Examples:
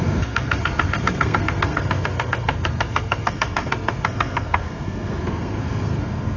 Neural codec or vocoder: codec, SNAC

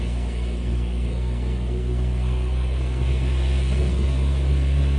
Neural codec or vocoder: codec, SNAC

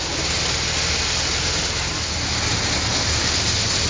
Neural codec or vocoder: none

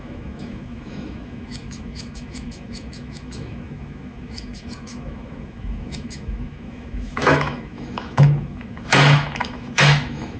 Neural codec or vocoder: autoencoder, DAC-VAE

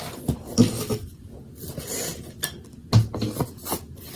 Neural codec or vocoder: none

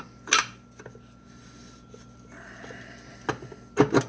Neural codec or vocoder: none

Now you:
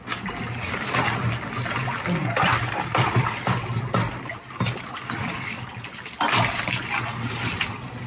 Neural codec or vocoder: none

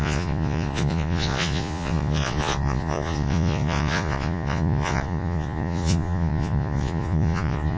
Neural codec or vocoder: vocoder, Vocos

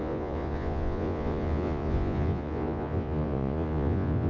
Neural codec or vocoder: vocoder, Vocos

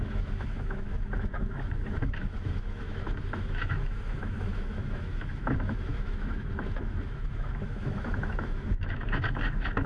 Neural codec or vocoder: autoencoder, DAC-VAE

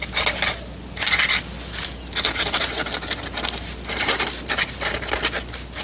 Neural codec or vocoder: none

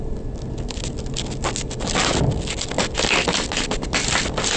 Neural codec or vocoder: none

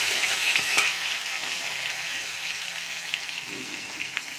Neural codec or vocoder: codec, SNAC